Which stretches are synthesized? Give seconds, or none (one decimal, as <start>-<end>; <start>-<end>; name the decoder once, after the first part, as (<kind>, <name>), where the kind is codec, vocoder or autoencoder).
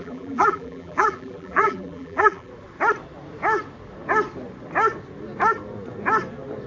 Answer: 0.0-2.5 (vocoder, BigVGAN v2)